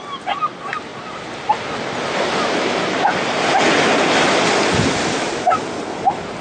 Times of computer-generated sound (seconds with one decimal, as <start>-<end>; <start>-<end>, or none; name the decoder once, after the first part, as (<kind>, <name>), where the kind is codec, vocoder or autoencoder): none